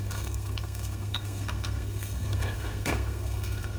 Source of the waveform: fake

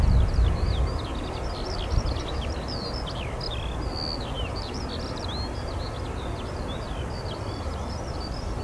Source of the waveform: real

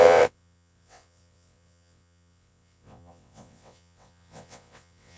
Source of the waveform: fake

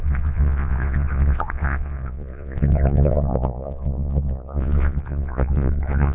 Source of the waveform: fake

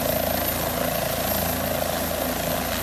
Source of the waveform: real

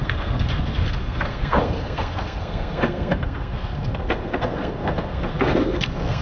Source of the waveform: fake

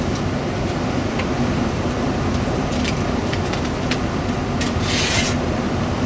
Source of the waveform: real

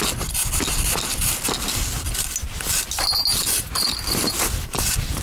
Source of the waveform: real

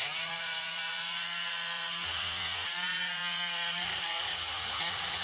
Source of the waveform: fake